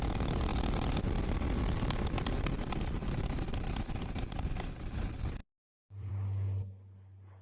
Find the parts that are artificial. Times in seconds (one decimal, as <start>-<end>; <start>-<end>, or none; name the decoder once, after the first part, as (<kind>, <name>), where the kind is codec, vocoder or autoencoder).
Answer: 5.4-6.1 (vocoder, BigVGAN v2)